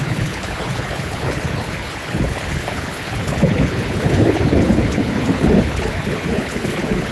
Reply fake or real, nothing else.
fake